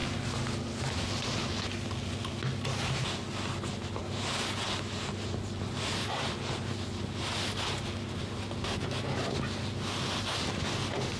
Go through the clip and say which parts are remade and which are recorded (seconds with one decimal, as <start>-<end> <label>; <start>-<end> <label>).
0.0-11.2 recorded